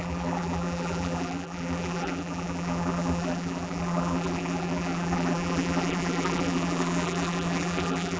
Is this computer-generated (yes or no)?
yes